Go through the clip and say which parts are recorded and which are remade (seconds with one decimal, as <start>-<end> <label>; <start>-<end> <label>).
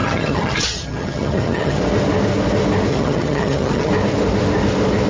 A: 0.0-1.8 remade; 1.8-2.9 recorded; 2.9-3.9 remade; 3.9-5.1 recorded